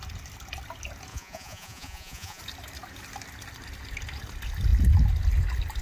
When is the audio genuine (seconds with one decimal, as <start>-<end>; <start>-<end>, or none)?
0.0-1.1; 2.4-5.8